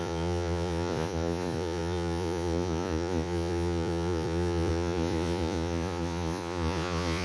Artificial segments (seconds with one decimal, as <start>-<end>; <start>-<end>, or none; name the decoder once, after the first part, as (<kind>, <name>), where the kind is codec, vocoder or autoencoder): 0.0-7.2 (vocoder, Vocos)